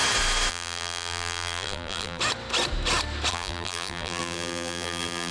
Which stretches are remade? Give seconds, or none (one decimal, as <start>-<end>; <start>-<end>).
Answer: 0.5-2.2; 3.3-5.3